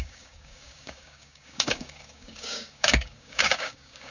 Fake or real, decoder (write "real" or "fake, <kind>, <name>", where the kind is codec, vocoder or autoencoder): fake, codec, DAC